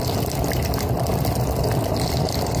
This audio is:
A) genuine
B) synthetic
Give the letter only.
B